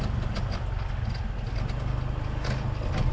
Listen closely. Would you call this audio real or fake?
real